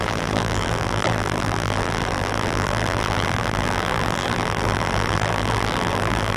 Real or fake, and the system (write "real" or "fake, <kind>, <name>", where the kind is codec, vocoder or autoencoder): fake, vocoder, BigVGAN v2